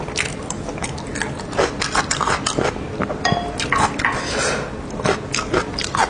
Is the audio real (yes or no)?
yes